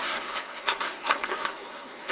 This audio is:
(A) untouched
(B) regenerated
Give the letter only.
B